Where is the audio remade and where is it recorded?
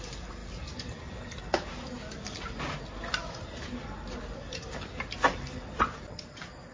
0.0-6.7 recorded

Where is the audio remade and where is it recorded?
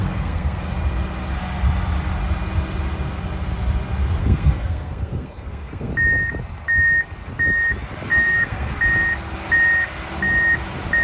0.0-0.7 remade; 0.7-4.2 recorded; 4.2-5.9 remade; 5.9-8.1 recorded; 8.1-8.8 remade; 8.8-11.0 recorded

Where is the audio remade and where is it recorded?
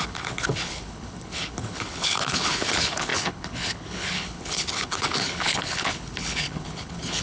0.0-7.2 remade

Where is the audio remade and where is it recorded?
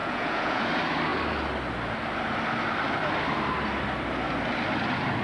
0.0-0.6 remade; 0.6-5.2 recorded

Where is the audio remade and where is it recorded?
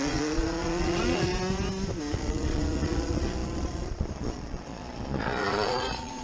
0.0-1.3 remade; 1.3-2.1 recorded; 2.1-6.2 remade